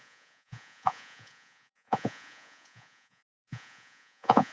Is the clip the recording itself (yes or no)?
no